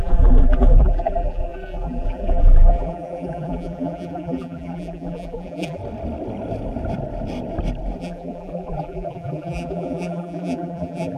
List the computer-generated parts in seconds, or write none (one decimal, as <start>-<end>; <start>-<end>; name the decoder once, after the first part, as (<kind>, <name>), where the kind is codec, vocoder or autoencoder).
0.0-5.8 (vocoder, BigVGAN v2); 8.0-11.2